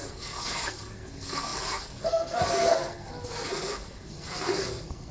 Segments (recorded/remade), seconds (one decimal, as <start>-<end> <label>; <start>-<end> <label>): 0.0-5.1 remade